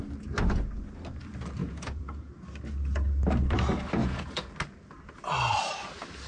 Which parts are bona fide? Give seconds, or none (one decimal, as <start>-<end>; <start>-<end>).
0.0-1.6; 2.3-4.0; 4.5-6.3